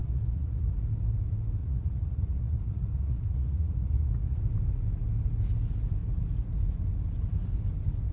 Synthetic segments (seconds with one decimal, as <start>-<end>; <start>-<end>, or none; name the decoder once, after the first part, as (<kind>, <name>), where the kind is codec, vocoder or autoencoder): 0.0-0.7 (vocoder, Vocos); 1.6-4.4